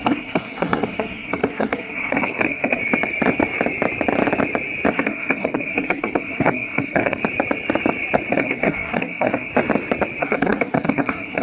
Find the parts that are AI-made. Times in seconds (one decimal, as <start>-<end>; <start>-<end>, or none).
0.0-2.8; 4.9-7.2; 8.3-9.5; 10.2-11.4